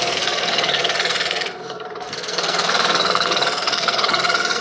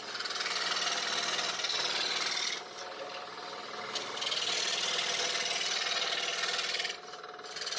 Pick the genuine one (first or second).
second